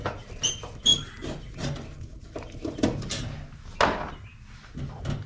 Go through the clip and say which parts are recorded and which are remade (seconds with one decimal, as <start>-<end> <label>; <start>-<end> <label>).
0.0-5.3 recorded